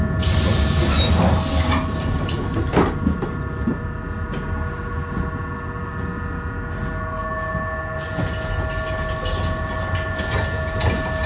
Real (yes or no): yes